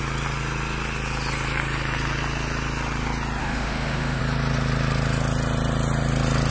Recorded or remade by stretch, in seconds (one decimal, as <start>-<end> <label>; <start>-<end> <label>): 0.0-3.4 recorded; 3.4-4.2 remade; 4.2-6.5 recorded